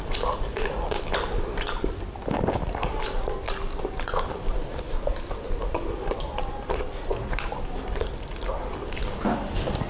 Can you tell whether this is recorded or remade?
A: recorded